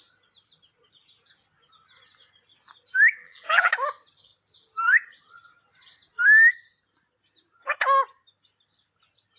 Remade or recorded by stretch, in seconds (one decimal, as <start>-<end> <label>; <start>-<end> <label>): 0.0-3.2 recorded; 3.2-3.7 remade; 3.7-9.4 recorded